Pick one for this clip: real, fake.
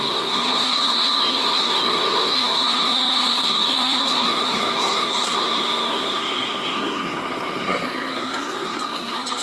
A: fake